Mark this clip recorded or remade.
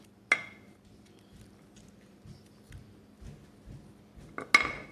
recorded